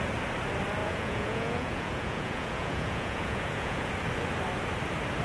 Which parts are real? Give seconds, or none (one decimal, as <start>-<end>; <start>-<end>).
0.0-0.8; 3.9-5.2